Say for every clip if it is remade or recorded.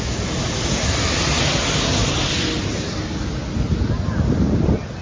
recorded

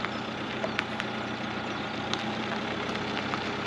recorded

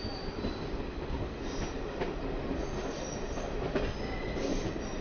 recorded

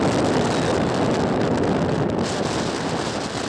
recorded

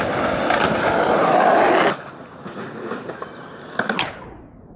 recorded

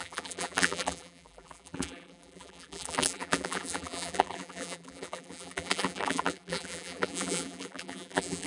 remade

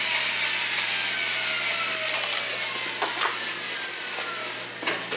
recorded